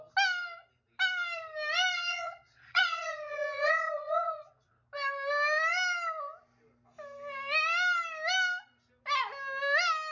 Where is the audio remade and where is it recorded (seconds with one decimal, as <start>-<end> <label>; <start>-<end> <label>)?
0.0-2.1 recorded; 2.1-4.7 remade; 4.7-10.1 recorded